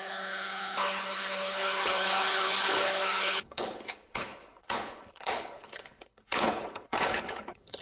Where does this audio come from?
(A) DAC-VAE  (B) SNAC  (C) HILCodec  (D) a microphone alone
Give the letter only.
C